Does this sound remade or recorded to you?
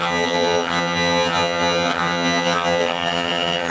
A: remade